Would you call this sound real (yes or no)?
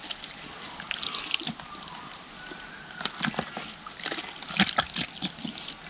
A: yes